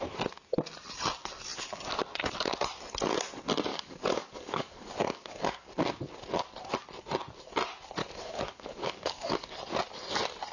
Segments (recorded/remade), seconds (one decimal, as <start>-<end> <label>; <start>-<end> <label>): 0.0-3.7 recorded; 3.7-5.7 remade; 5.7-8.0 recorded; 8.0-9.5 remade; 9.5-10.5 recorded